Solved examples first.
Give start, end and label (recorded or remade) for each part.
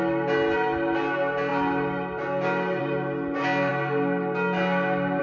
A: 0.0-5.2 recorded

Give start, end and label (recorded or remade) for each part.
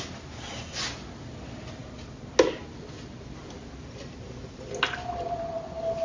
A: 0.0-6.0 recorded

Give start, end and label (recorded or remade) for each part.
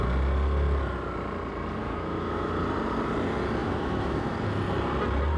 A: 0.0-1.8 recorded; 1.8-2.5 remade; 2.5-3.6 recorded; 3.6-4.3 remade; 4.3-5.4 recorded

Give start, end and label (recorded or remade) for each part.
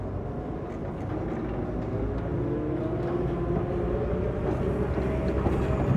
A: 0.0-6.0 recorded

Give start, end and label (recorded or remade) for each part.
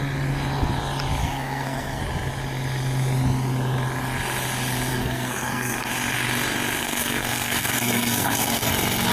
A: 0.0-1.2 recorded; 1.2-2.0 remade; 2.0-4.9 recorded; 4.9-5.9 remade; 5.9-6.8 recorded; 6.8-8.7 remade; 8.7-9.1 recorded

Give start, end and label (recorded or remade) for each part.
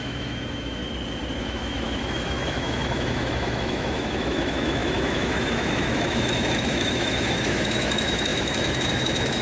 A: 0.0-0.8 remade; 0.8-1.4 recorded; 1.4-9.4 remade